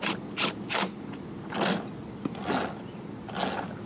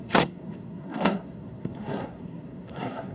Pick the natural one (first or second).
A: first